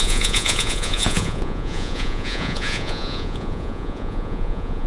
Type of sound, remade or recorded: remade